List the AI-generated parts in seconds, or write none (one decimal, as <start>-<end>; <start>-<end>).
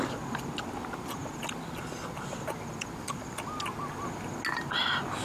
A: none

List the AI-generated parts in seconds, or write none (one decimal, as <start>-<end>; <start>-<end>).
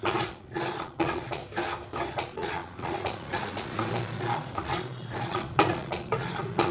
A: 0.0-1.4; 2.1-6.7